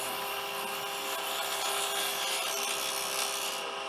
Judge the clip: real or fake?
real